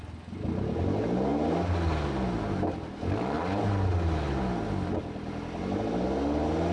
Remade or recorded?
recorded